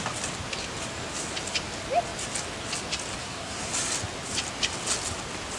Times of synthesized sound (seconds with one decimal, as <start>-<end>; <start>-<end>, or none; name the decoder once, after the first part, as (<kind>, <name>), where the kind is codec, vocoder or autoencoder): 3.2-3.7 (codec, SNAC)